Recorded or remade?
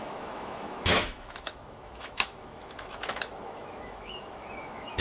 remade